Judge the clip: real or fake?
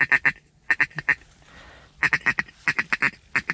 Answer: real